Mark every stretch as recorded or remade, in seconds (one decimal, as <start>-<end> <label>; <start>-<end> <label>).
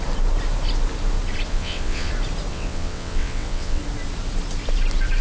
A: 0.0-1.5 recorded; 1.5-2.1 remade; 2.1-2.5 recorded; 2.5-3.8 remade; 3.8-5.2 recorded